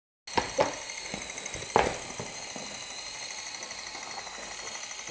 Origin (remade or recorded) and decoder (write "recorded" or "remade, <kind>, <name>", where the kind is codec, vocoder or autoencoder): recorded